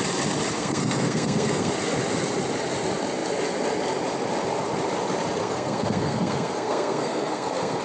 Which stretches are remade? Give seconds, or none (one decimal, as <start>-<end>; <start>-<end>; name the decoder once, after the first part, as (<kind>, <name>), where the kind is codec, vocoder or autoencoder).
0.6-1.7 (codec, SNAC); 5.4-7.8